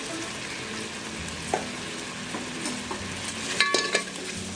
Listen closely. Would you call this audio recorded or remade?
recorded